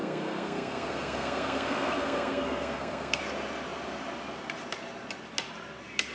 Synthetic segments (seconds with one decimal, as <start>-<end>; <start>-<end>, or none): 0.0-3.2